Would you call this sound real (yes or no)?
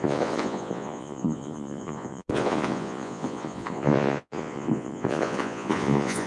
no